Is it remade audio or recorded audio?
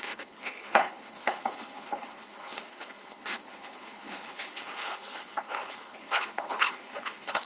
remade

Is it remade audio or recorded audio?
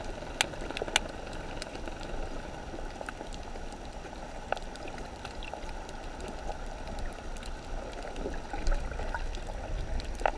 recorded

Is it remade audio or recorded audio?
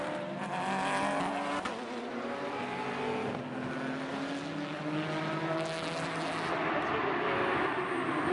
recorded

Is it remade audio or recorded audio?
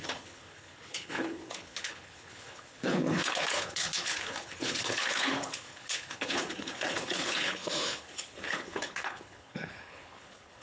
remade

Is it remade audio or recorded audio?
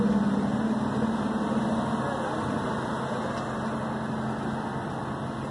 recorded